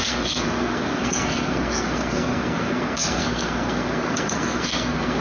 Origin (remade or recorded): remade